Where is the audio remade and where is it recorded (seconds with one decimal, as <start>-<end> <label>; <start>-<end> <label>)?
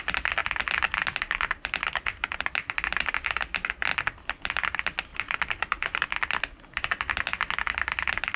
0.0-3.9 recorded; 3.9-6.6 remade; 6.6-8.4 recorded